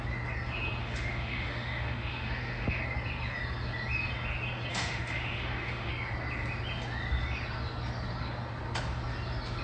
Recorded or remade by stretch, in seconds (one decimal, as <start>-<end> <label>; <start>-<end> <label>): 0.0-0.8 recorded; 0.8-2.8 remade; 2.8-4.7 recorded; 4.7-5.9 remade; 5.9-9.6 recorded